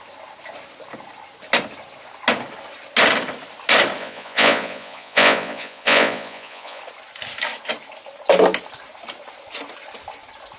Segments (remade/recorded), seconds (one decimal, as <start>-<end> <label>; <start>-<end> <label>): 0.0-4.0 recorded; 4.0-6.8 remade; 6.8-10.6 recorded